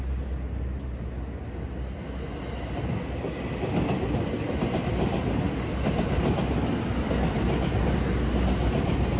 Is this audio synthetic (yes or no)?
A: no